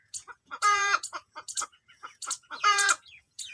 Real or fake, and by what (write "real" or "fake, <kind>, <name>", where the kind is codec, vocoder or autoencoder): fake, vocoder, Vocos